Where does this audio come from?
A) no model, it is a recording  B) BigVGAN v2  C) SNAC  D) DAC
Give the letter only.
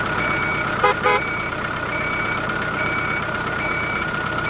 B